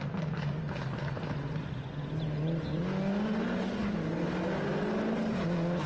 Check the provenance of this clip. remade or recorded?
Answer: recorded